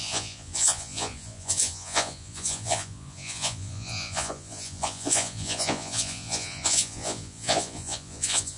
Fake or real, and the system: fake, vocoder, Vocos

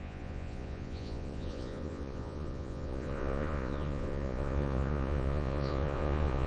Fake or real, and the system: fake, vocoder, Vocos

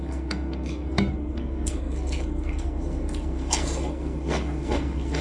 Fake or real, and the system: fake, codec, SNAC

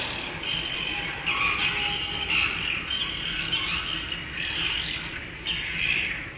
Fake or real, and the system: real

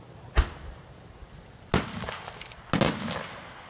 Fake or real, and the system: real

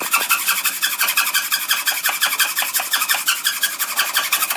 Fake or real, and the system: real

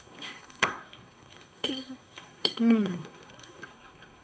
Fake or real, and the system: fake, codec, SNAC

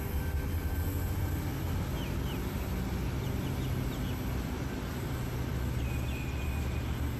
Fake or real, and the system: real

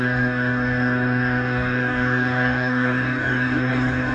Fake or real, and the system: fake, codec, DAC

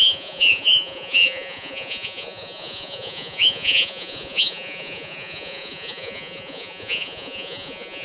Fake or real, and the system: fake, vocoder, Vocos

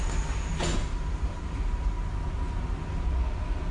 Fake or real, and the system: real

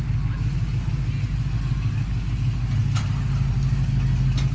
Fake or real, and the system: real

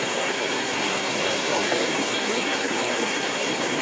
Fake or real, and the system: fake, codec, SNAC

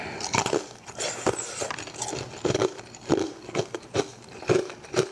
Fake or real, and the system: real